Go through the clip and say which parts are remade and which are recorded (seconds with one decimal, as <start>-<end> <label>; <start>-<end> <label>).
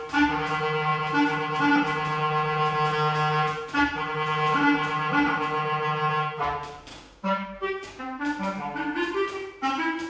0.0-6.9 recorded; 6.9-8.0 remade; 8.0-10.1 recorded